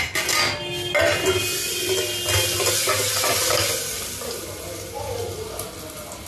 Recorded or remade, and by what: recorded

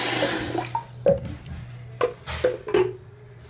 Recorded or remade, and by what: recorded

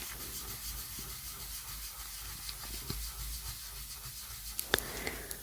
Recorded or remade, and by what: recorded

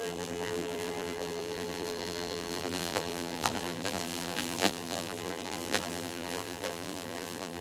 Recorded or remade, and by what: remade, vocoder, BigVGAN v2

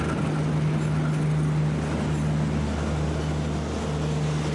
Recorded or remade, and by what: recorded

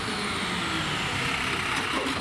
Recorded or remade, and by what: recorded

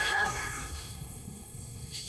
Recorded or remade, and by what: remade, codec, SNAC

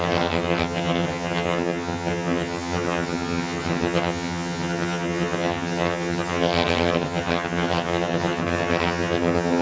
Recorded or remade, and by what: remade, vocoder, HiFi-GAN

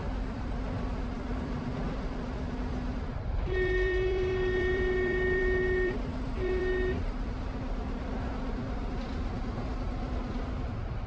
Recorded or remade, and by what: remade, vocoder, BigVGAN v2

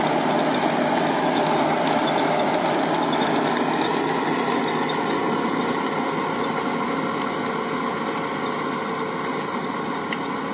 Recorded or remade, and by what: recorded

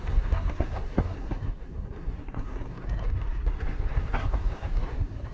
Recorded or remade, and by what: remade, codec, SNAC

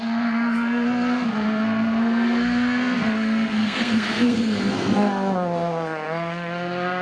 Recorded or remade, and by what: remade, codec, SNAC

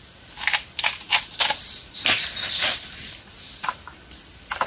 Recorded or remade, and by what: recorded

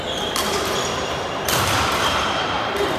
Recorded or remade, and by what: remade, vocoder, BigVGAN v2